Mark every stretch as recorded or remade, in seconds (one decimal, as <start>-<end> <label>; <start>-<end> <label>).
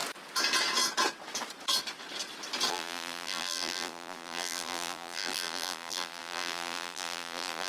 0.0-2.7 recorded; 2.7-7.7 remade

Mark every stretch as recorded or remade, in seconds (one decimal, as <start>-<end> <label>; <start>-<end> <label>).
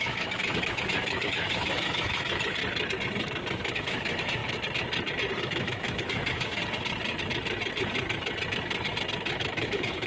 0.0-2.6 remade; 2.6-3.7 recorded; 3.7-4.4 remade; 4.4-5.4 recorded; 5.4-6.6 remade; 6.6-9.3 recorded; 9.3-10.1 remade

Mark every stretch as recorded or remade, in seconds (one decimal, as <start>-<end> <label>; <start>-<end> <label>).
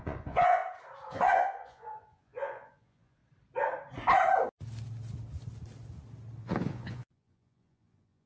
0.0-0.6 remade; 0.6-1.1 recorded; 1.1-3.2 remade; 3.2-6.4 recorded; 6.4-8.3 remade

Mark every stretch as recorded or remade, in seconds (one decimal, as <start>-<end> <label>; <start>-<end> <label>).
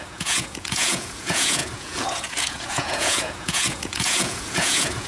0.0-5.1 remade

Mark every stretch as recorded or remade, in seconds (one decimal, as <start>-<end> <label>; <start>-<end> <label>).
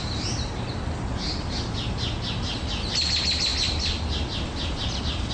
0.0-5.3 recorded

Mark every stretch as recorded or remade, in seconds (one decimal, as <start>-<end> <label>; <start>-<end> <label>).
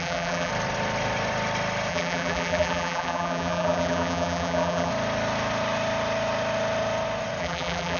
0.0-0.5 remade; 0.5-1.9 recorded; 1.9-4.9 remade; 4.9-7.4 recorded; 7.4-8.0 remade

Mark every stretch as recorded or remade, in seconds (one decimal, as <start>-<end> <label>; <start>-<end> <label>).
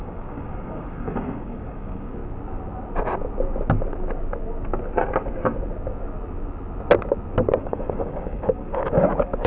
0.0-2.2 remade; 2.2-7.5 recorded; 7.5-9.5 remade